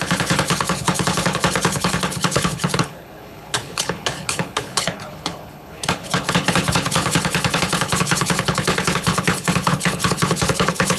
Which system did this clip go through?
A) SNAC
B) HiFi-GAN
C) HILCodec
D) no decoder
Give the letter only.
C